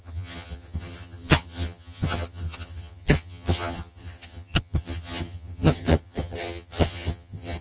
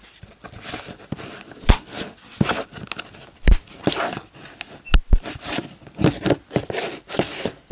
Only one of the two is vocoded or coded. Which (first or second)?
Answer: first